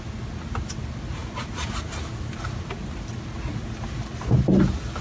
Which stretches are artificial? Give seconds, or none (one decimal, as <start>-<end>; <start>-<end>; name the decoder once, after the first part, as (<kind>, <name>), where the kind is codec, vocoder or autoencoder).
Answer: none